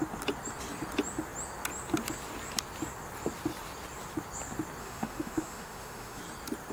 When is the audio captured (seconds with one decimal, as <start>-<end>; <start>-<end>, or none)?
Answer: 0.0-4.8; 6.2-6.7